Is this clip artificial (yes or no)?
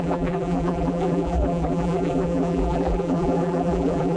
yes